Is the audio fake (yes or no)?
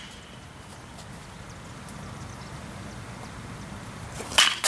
no